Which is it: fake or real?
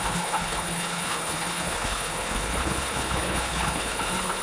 fake